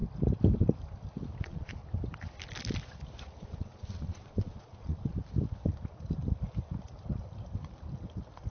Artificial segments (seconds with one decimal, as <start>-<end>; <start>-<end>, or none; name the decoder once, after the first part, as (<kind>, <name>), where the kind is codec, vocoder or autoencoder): 1.4-1.8 (vocoder, Vocos); 3.4-5.1